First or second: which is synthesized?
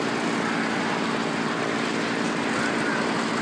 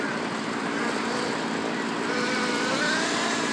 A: second